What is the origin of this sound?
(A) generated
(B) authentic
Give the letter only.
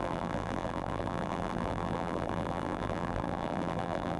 A